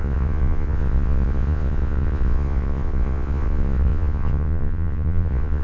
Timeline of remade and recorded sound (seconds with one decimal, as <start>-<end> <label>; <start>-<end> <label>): 0.0-5.6 remade